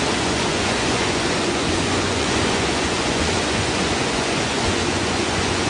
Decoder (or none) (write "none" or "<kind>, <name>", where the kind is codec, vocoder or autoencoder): vocoder, Vocos